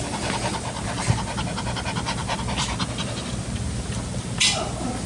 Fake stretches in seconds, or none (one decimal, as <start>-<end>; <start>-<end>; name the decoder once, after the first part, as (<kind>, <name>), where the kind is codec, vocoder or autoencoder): none